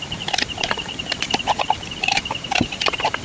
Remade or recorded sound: remade